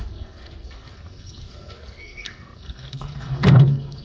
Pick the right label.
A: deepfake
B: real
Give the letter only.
A